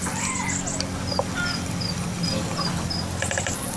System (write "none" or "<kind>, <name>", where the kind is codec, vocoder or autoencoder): none